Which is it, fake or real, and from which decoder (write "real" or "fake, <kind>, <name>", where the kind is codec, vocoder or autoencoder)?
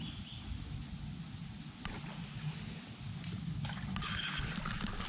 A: real